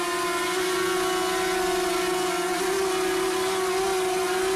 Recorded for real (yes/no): yes